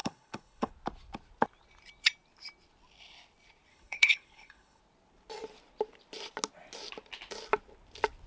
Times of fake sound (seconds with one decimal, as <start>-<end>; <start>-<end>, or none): 0.0-0.7; 3.7-4.8